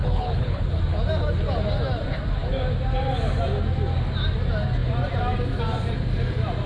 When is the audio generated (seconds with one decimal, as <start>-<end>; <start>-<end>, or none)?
0.0-0.8